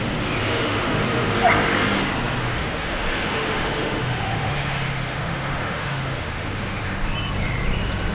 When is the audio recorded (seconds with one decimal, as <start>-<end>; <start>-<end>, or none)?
0.0-0.4; 1.3-2.4; 7.1-8.1